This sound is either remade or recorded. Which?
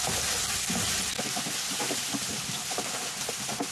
recorded